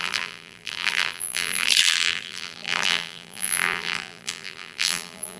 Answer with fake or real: fake